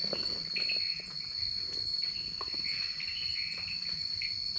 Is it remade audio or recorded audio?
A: recorded